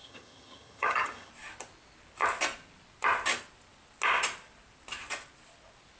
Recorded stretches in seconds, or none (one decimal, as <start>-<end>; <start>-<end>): 1.3-6.0